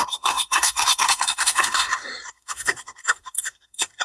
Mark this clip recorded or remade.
remade